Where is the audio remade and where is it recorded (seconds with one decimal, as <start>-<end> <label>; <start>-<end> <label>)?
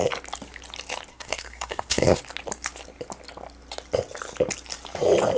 0.0-1.1 recorded; 1.1-2.2 remade; 2.2-5.4 recorded